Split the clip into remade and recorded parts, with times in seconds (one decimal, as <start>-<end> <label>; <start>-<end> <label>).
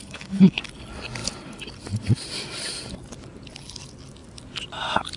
0.0-0.6 remade; 0.6-5.2 recorded